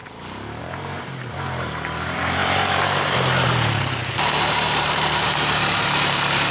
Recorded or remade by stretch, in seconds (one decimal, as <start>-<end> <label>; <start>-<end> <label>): 0.0-0.6 recorded; 0.6-6.5 remade